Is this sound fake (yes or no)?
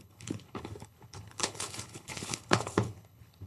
yes